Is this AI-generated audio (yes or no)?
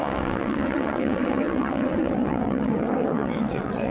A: yes